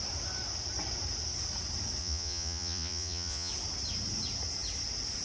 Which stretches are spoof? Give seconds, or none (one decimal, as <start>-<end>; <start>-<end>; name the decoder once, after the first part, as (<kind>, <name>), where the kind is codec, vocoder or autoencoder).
2.0-3.5 (vocoder, Vocos)